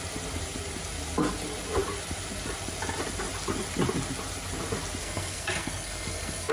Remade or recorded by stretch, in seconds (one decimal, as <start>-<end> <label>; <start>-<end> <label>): 0.0-5.0 recorded; 5.0-6.5 remade